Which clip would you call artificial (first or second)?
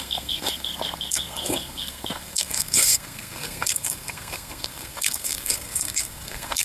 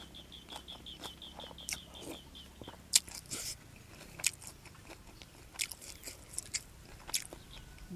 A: first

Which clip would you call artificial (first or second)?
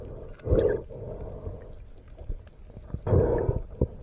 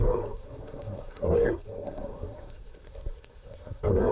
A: second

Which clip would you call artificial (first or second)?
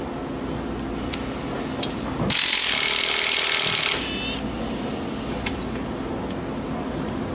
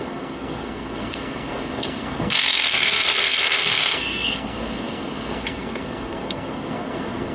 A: second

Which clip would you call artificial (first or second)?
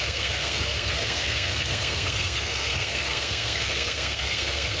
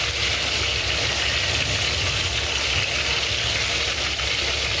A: first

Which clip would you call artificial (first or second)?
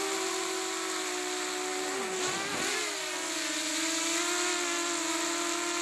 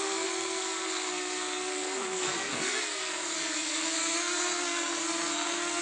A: second